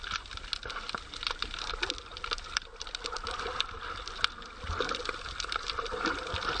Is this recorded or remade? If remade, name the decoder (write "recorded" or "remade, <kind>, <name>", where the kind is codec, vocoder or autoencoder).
recorded